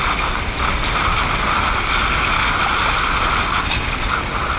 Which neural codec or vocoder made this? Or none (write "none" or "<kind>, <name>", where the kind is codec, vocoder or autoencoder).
none